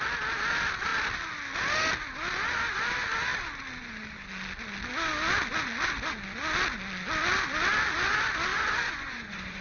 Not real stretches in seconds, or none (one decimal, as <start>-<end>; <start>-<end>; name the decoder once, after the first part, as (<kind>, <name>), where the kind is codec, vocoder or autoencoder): 8.5-9.6 (vocoder, Vocos)